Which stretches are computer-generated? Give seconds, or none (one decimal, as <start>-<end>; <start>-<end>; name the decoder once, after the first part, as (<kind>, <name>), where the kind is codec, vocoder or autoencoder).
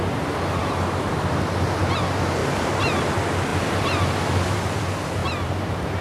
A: 2.4-3.1 (vocoder, BigVGAN v2); 5.2-6.0